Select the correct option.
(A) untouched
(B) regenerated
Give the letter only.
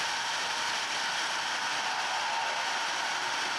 A